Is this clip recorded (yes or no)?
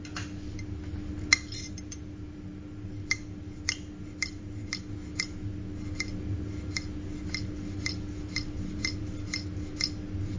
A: yes